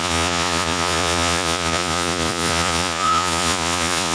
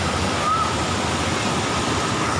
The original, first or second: second